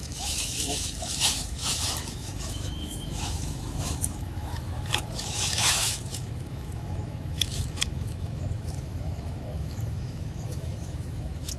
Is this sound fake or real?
fake